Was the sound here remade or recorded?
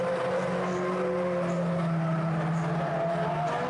recorded